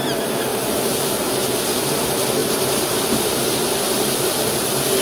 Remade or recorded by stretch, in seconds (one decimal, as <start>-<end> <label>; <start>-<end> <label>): 0.0-0.5 recorded; 0.5-1.3 remade; 1.3-2.4 recorded; 2.4-4.3 remade; 4.3-5.0 recorded